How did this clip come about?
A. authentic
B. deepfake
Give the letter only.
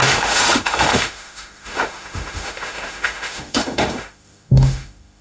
B